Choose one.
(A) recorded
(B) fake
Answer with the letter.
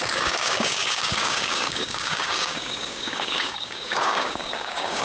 B